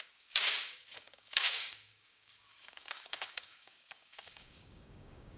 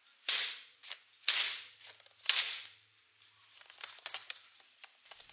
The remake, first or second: first